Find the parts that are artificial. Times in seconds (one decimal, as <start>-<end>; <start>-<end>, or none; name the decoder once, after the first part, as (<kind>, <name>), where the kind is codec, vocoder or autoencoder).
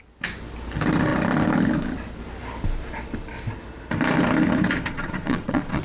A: 4.9-5.8 (vocoder, Vocos)